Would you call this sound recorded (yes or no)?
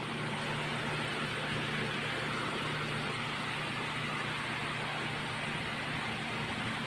yes